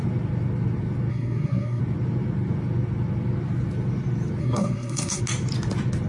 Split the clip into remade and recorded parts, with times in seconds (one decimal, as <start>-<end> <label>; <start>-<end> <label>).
0.0-1.1 recorded; 1.1-1.8 remade; 1.8-4.4 recorded; 4.4-5.2 remade; 5.2-6.1 recorded